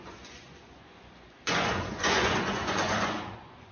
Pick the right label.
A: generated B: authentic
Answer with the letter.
A